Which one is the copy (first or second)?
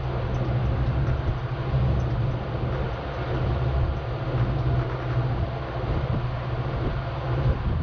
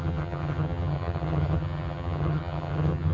second